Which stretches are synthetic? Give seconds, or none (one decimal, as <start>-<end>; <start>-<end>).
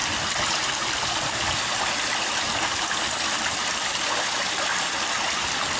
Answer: none